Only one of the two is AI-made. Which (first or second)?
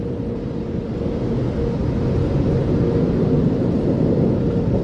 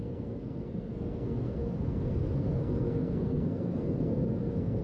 second